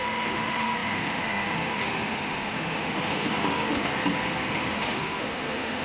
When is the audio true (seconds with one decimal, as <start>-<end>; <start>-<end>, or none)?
3.9-4.5